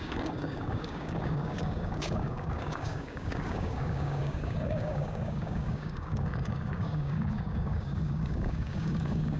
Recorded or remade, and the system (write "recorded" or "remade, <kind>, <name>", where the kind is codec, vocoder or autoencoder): remade, codec, DAC